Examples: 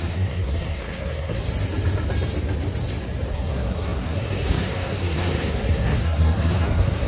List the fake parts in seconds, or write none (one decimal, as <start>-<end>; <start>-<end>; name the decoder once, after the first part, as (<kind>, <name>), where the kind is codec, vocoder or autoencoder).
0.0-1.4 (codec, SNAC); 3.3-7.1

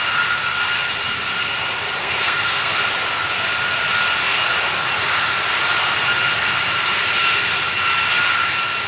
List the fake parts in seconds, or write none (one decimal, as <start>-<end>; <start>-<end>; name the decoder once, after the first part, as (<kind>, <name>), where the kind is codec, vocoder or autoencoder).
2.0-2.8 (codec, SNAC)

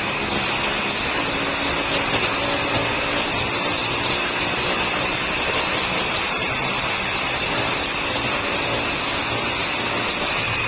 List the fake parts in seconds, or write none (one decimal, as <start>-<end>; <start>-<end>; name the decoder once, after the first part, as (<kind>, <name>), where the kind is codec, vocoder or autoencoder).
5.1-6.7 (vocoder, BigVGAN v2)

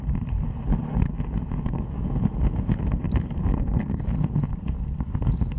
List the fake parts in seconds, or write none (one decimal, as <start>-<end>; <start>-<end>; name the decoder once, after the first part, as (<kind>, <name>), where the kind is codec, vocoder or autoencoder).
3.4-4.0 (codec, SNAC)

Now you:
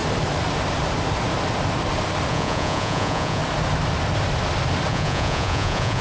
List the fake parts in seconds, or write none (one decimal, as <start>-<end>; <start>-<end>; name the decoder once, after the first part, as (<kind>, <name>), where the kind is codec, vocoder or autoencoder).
2.3-3.4 (vocoder, Vocos); 4.9-6.0